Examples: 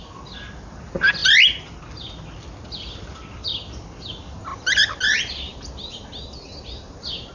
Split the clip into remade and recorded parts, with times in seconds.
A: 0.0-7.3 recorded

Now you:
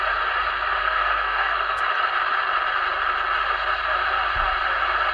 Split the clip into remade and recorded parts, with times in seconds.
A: 0.0-0.8 recorded; 0.8-1.8 remade; 1.8-5.1 recorded

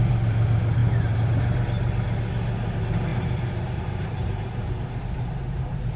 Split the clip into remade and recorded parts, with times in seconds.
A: 0.0-3.1 recorded; 3.1-6.0 remade

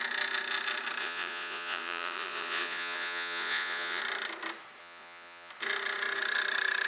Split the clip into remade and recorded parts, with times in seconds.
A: 0.0-1.0 recorded; 1.0-4.0 remade; 4.0-4.8 recorded; 4.8-5.5 remade; 5.5-6.9 recorded